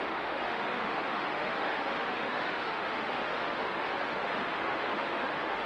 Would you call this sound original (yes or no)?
no